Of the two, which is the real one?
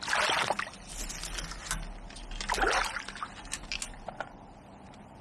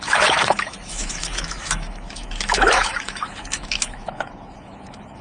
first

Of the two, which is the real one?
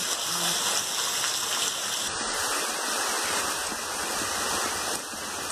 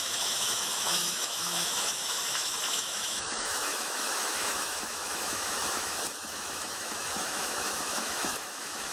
first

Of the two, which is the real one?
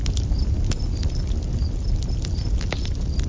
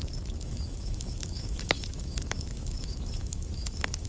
first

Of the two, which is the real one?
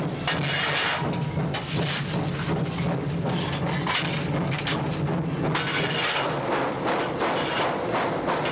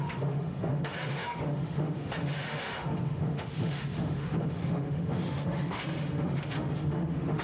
first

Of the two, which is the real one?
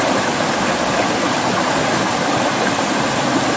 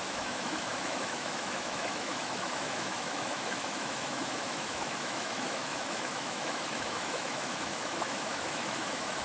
first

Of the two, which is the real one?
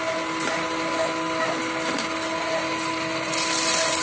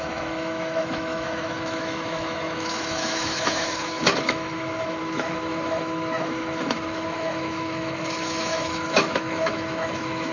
first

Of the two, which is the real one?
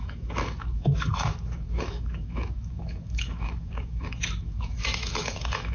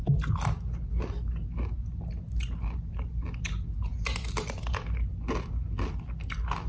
second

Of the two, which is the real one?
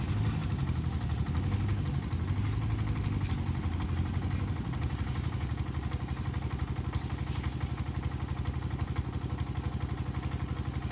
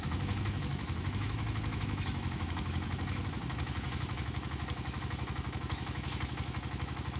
first